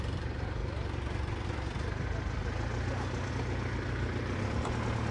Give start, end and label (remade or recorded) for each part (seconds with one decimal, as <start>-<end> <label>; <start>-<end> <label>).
0.0-5.1 recorded